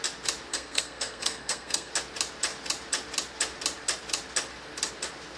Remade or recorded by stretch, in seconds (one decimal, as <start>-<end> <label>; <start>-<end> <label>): 0.0-0.5 recorded; 0.5-1.9 remade; 1.9-5.4 recorded